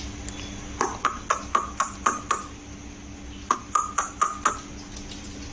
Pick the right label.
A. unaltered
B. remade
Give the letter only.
A